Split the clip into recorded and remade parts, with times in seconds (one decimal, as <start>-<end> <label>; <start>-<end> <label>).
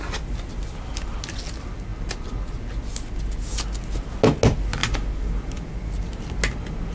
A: 0.0-6.9 recorded